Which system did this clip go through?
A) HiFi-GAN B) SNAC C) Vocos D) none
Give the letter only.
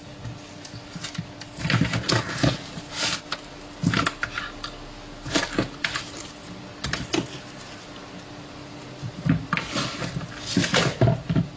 D